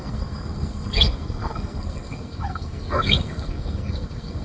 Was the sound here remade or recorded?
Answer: remade